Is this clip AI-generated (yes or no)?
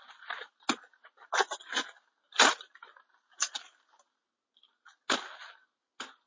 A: no